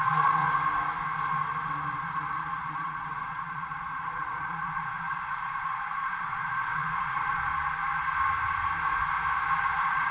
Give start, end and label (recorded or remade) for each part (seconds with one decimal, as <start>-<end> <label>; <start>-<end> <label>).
0.0-0.4 remade; 0.4-2.1 recorded; 2.1-7.5 remade; 7.5-9.6 recorded; 9.6-10.1 remade